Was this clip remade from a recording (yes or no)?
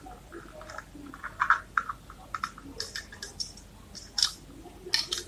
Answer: no